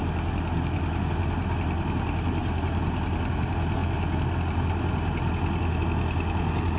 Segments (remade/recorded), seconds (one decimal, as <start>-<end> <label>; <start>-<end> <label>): 0.0-6.8 recorded